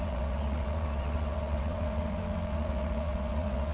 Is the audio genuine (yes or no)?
no